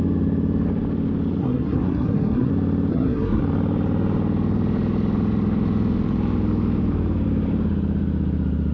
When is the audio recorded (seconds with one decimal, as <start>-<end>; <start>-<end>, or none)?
0.0-1.4; 2.5-2.9; 3.4-8.7